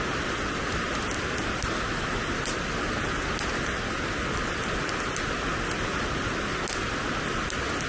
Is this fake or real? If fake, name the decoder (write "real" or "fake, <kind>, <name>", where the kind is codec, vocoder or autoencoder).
real